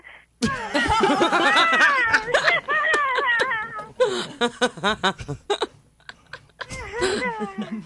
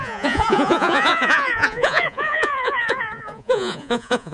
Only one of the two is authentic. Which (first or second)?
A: first